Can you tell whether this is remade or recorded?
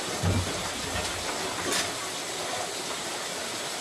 recorded